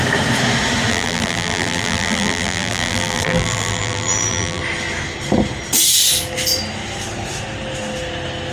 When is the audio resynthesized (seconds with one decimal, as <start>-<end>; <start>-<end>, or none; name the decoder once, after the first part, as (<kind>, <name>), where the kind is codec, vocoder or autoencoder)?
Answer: 0.9-4.6 (vocoder, BigVGAN v2)